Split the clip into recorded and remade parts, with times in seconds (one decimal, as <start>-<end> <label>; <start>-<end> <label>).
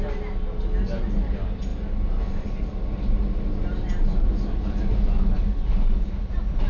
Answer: 0.0-6.7 recorded